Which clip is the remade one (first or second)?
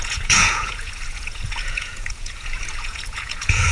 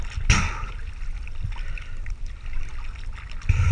first